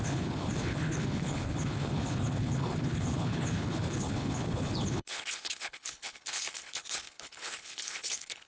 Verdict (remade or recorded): remade